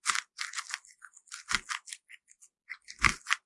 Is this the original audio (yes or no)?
yes